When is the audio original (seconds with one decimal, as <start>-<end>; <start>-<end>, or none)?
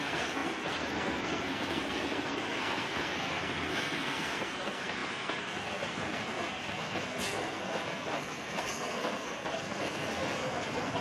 none